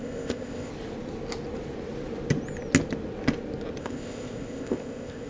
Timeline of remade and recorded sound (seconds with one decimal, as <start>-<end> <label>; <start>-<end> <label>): 0.0-0.7 remade; 0.7-3.8 recorded; 3.8-5.3 remade